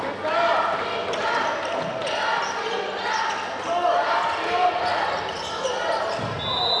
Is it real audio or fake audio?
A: real